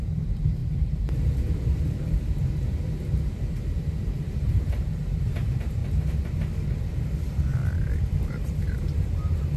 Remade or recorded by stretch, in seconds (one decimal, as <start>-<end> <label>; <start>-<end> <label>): 0.0-5.8 remade; 5.8-6.9 recorded; 6.9-7.6 remade; 7.6-8.2 recorded; 8.2-9.6 remade